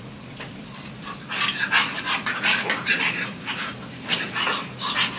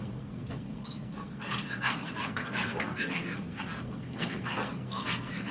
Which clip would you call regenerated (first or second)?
second